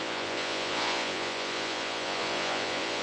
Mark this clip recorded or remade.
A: remade